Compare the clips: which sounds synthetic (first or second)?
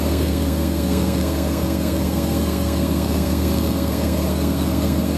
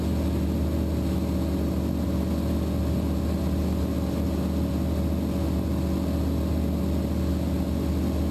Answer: first